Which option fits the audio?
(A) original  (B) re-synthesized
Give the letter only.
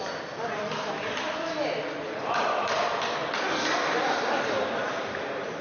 A